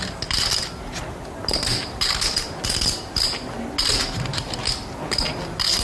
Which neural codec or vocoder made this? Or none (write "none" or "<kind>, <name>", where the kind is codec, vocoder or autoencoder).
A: none